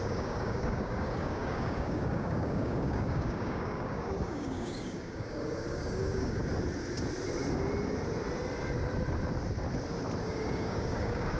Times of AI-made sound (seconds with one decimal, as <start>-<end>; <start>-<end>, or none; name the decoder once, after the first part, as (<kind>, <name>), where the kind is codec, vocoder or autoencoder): 0.0-6.4 (codec, DAC); 10.2-11.4